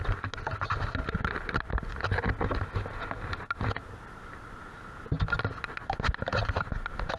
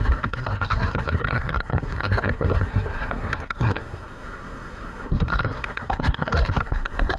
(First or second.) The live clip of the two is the first